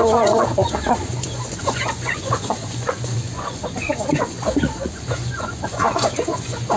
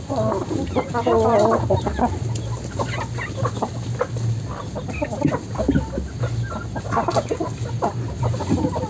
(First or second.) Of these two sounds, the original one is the second